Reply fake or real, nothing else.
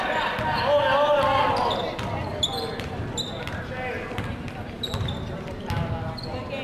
real